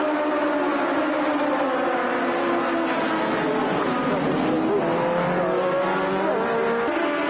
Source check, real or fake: real